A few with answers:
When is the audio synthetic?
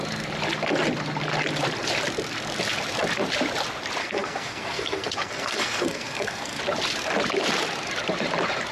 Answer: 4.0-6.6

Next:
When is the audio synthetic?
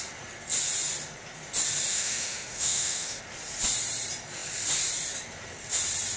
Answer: 1.9-3.2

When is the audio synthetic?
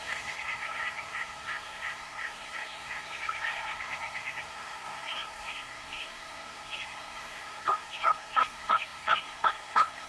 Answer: 0.0-10.1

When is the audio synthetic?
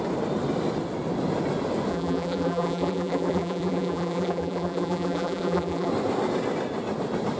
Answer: 1.9-5.9